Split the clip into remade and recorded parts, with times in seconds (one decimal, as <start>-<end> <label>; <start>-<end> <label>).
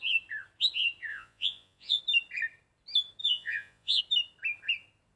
0.0-1.1 recorded; 1.1-2.0 remade; 2.0-3.2 recorded; 3.2-4.0 remade; 4.0-5.2 recorded